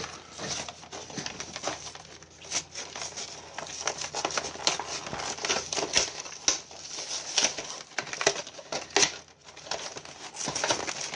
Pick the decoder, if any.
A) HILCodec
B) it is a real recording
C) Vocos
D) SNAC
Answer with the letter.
B